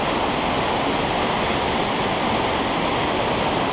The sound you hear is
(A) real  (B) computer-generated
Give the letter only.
A